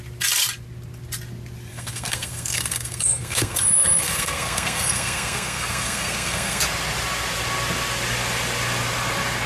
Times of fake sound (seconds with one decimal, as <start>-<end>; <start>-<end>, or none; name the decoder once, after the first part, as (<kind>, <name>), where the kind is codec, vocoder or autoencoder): 1.7-6.6 (codec, SNAC)